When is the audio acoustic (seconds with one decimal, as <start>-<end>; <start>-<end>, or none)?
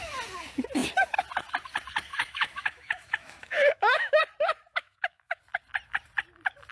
0.0-2.1; 4.2-4.7; 5.4-6.7